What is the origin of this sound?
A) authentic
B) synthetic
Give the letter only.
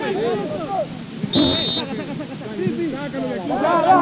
A